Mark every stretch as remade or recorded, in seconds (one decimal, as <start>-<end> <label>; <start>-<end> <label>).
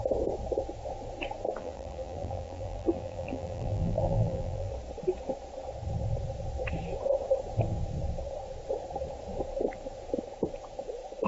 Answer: 0.0-1.6 recorded; 1.6-4.7 remade; 4.7-11.3 recorded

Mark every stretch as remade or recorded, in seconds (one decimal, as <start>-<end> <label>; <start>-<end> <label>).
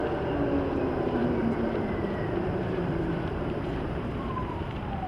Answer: 0.0-0.7 recorded; 0.7-5.1 remade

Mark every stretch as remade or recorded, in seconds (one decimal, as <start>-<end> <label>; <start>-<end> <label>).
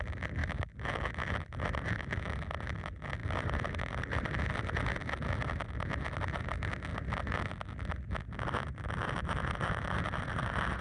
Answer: 0.0-10.8 recorded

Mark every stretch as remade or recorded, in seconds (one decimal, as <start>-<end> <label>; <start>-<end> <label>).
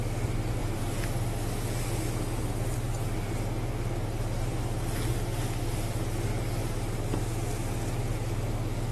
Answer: 0.0-0.6 recorded; 0.6-1.3 remade; 1.3-6.6 recorded; 6.6-7.3 remade; 7.3-8.9 recorded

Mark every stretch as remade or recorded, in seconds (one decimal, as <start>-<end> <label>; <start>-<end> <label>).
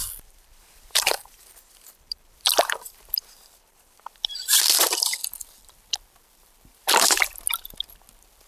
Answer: 0.0-4.6 remade; 4.6-8.5 recorded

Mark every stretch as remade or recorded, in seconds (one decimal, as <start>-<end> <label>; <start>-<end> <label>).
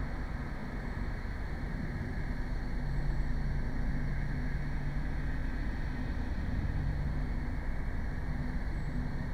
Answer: 0.0-0.6 recorded; 0.6-2.2 remade; 2.2-5.4 recorded; 5.4-7.8 remade; 7.8-9.3 recorded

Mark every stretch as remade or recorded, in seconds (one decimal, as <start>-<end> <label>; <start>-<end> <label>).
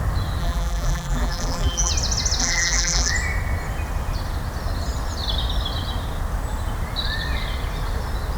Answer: 0.0-0.4 recorded; 0.4-1.9 remade; 1.9-2.4 recorded; 2.4-3.1 remade; 3.1-8.4 recorded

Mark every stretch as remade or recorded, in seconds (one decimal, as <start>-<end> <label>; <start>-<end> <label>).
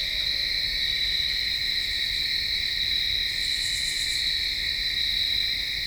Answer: 0.0-0.8 recorded; 0.8-1.6 remade; 1.6-5.1 recorded; 5.1-5.9 remade